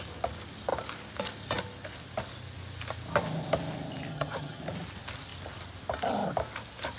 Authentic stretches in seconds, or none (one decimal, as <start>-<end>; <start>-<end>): 0.0-4.1; 4.6-7.0